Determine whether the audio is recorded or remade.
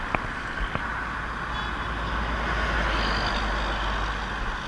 recorded